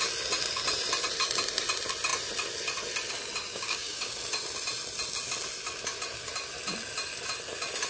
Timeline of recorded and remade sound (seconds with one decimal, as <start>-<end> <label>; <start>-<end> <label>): 0.0-3.5 recorded; 3.5-4.1 remade; 4.1-7.9 recorded